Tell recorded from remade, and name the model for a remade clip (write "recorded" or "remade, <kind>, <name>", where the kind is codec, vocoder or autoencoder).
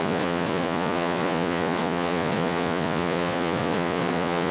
remade, vocoder, Vocos